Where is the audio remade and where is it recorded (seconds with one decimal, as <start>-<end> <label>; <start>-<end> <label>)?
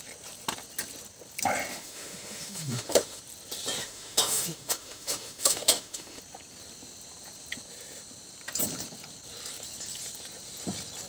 0.0-1.7 recorded; 1.7-3.2 remade; 3.2-3.8 recorded; 3.8-6.2 remade; 6.2-11.1 recorded